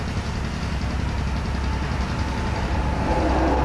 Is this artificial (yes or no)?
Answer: no